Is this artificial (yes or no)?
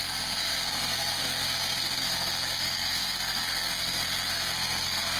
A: yes